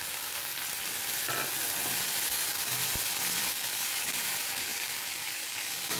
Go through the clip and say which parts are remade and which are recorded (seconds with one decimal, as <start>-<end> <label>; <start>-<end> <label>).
0.0-0.5 remade; 0.5-2.3 recorded; 2.3-2.8 remade; 2.8-3.5 recorded; 3.5-6.0 remade